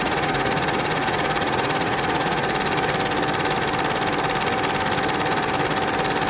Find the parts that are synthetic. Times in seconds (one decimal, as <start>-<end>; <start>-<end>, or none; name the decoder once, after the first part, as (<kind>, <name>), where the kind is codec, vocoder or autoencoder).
0.0-2.4 (vocoder, Vocos)